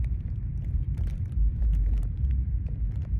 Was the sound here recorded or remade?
remade